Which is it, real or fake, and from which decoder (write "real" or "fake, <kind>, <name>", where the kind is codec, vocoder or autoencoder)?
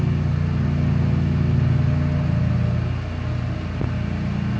real